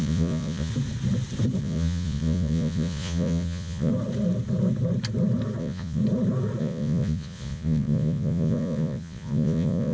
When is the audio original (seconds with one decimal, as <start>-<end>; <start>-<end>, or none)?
0.7-1.6; 3.9-5.6; 6.0-6.6